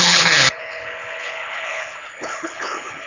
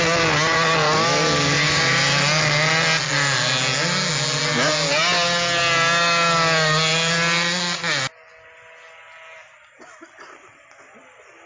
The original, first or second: second